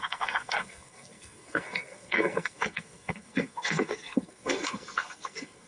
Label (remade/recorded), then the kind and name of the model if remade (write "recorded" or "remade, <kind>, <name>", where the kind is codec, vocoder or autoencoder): remade, codec, SNAC